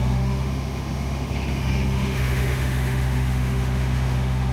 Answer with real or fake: fake